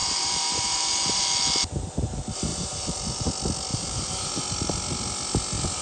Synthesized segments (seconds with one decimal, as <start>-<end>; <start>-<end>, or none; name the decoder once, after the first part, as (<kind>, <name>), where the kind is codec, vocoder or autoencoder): 0.0-1.2 (vocoder, BigVGAN v2); 2.5-3.3; 3.7-4.4